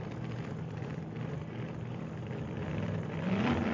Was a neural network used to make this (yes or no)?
yes